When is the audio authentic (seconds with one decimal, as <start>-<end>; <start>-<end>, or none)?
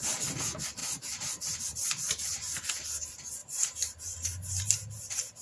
0.0-0.8; 1.6-3.4; 4.6-5.4